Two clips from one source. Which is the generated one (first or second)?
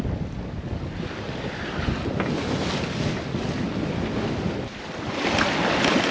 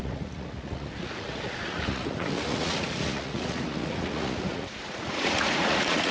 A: second